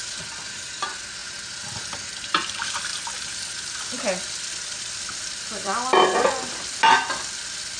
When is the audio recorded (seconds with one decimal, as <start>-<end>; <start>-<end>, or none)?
1.2-2.1; 2.9-4.5; 5.7-7.8